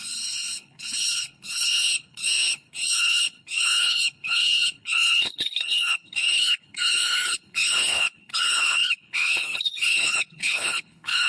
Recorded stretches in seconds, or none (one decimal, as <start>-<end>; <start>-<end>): none